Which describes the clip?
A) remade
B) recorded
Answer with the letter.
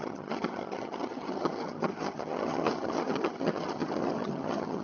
A